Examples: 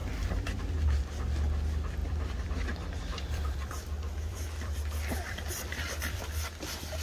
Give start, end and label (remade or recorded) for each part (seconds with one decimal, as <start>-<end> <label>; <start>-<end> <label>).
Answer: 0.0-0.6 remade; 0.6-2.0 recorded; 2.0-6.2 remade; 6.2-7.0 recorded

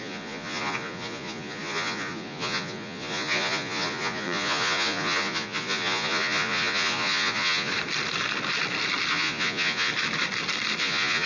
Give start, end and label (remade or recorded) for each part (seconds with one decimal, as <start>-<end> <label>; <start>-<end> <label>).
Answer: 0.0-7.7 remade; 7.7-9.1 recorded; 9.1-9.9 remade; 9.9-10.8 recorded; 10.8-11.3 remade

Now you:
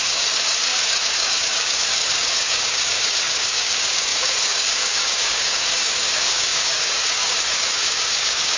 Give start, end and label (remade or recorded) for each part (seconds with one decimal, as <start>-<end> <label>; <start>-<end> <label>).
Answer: 0.0-8.6 remade

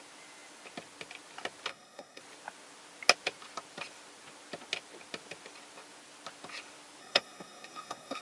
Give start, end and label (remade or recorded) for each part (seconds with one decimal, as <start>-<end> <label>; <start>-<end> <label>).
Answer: 0.0-1.7 recorded; 1.7-2.2 remade; 2.2-7.0 recorded; 7.0-8.2 remade

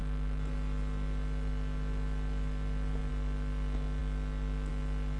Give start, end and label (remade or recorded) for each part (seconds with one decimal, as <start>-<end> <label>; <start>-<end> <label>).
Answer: 0.0-5.2 recorded

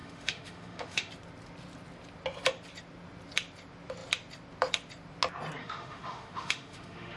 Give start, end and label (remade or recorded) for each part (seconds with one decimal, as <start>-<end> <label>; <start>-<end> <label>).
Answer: 0.0-1.1 remade; 1.1-5.6 recorded; 5.6-7.2 remade

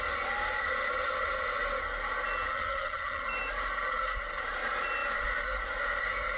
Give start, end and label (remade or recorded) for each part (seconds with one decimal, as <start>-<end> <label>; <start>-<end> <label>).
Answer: 0.0-2.5 recorded; 2.5-3.2 remade; 3.2-6.4 recorded